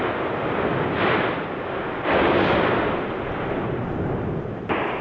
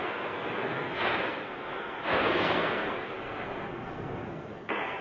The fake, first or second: second